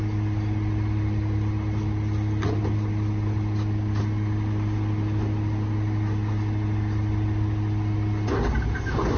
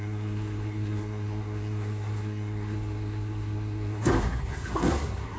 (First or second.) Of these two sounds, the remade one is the second